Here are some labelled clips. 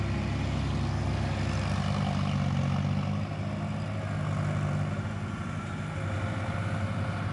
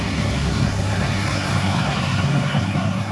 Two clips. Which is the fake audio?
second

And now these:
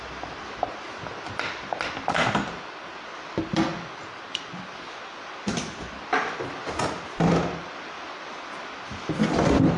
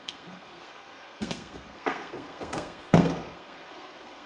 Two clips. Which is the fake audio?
second